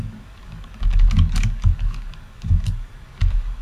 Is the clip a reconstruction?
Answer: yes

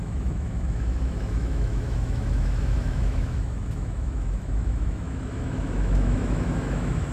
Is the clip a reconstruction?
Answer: yes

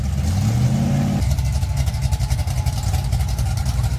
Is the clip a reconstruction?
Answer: no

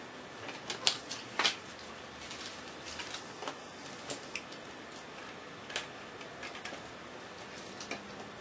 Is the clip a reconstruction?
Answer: no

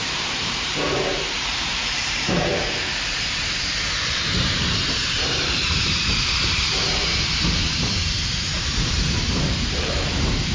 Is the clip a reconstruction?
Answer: yes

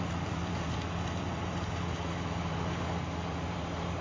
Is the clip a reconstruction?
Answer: yes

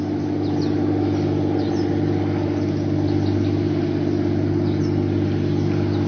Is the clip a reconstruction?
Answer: no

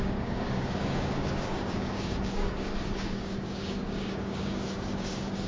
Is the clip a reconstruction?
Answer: yes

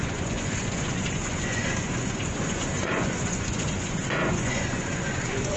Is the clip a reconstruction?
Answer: yes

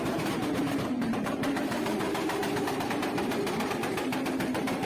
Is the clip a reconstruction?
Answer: yes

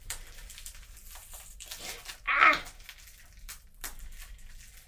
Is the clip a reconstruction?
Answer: no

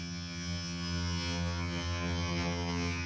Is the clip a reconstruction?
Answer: yes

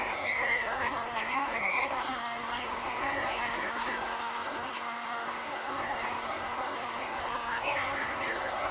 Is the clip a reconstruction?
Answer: yes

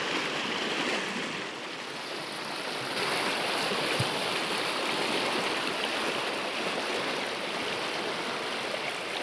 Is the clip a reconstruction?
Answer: no